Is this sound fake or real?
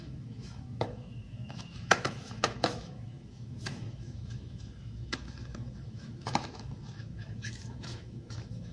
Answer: fake